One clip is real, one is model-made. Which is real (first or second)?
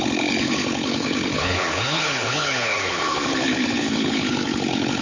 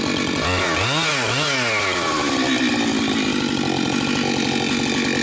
second